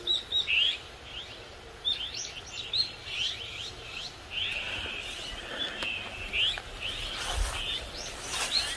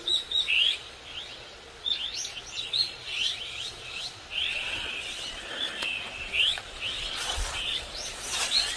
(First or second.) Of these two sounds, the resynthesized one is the second